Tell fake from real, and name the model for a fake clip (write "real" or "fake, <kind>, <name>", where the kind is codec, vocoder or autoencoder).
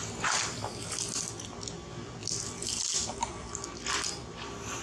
real